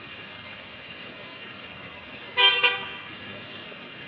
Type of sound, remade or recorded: remade